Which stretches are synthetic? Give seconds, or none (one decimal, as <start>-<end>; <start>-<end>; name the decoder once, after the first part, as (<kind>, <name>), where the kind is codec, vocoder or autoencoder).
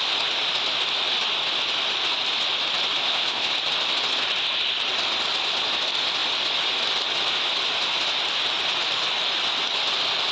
3.0-3.5 (codec, ZipCodec)